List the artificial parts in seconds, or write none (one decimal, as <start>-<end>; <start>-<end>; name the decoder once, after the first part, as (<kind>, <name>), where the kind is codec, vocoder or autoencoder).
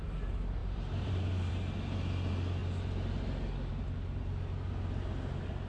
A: 0.6-1.5 (vocoder, BigVGAN v2)